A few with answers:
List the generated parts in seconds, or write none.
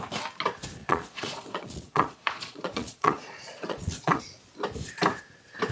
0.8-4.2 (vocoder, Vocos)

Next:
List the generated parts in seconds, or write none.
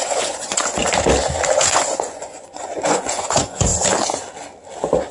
0.0-0.8 (vocoder, Vocos); 1.6-3.7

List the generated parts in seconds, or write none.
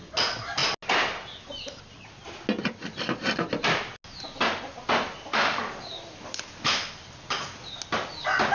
none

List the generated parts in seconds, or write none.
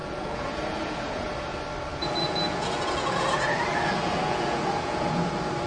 0.0-1.3 (vocoder, Vocos); 1.9-5.3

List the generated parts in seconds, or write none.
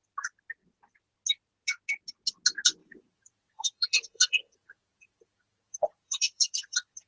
2.8-7.1 (vocoder, Vocos)